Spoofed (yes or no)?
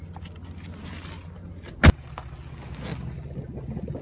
no